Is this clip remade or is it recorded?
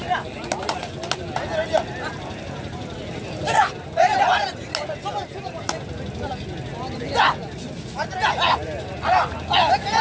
recorded